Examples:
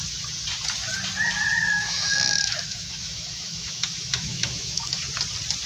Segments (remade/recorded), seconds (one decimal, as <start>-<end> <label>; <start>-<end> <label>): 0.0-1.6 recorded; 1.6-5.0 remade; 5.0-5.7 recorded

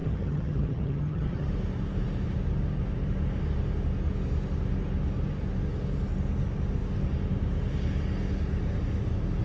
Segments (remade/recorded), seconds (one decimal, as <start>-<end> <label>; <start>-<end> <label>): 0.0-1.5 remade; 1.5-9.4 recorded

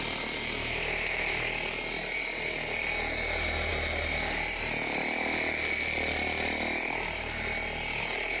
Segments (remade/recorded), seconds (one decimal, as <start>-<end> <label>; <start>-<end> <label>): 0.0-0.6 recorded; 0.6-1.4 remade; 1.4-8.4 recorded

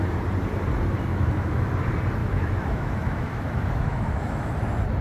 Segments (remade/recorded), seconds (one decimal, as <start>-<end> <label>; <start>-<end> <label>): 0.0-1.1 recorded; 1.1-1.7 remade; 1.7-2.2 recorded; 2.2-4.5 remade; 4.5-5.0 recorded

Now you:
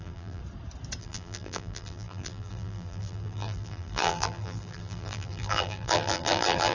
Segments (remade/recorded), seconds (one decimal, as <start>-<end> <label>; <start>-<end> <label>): 0.0-0.4 remade; 0.4-1.0 recorded; 1.0-6.7 remade

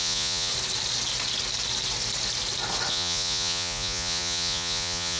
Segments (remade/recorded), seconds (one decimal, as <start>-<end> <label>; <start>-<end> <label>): 0.0-0.5 remade; 0.5-2.9 recorded; 2.9-5.2 remade

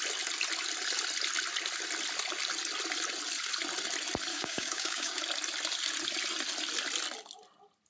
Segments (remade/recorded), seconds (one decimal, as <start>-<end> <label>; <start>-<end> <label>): 0.0-4.3 recorded; 4.3-5.2 remade; 5.2-7.9 recorded

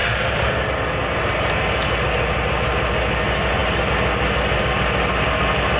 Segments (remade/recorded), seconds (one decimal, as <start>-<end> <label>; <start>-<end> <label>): 0.0-5.8 recorded